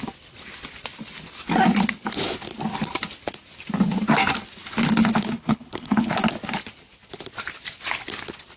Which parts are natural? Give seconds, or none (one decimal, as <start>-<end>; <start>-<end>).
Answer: 0.0-5.2; 6.2-8.6